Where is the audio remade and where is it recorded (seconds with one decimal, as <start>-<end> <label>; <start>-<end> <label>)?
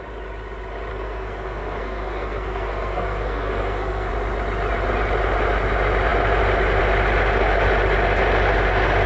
0.0-0.9 recorded; 0.9-4.1 remade; 4.1-9.1 recorded